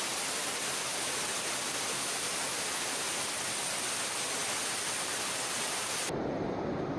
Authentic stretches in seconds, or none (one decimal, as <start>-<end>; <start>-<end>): 0.0-7.0